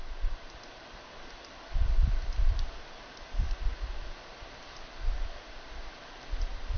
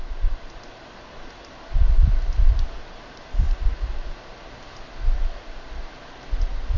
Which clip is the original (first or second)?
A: second